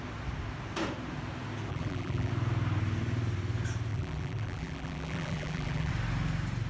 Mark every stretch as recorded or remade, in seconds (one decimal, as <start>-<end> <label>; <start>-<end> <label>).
0.0-1.7 recorded; 1.7-2.3 remade; 2.3-3.9 recorded; 3.9-5.9 remade; 5.9-6.7 recorded